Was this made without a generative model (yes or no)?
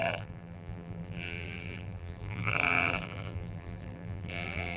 no